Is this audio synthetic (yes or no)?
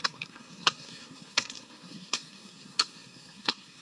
yes